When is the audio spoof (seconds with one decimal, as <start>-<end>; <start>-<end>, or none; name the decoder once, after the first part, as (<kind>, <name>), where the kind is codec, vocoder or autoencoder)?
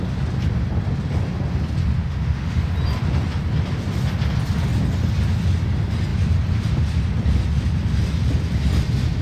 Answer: 2.0-2.6 (autoencoder, DAC-VAE)